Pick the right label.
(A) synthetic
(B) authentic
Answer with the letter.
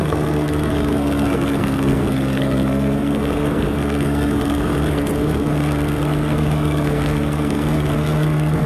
A